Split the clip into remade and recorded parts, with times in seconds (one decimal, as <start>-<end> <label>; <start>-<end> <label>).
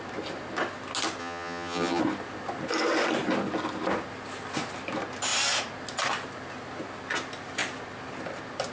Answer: 0.0-1.2 recorded; 1.2-2.0 remade; 2.0-8.7 recorded